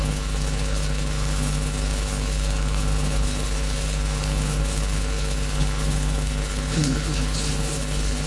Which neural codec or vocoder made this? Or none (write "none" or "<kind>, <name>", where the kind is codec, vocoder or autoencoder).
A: codec, HILCodec